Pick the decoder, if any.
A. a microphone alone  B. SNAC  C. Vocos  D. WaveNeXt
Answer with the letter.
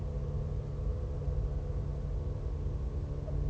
A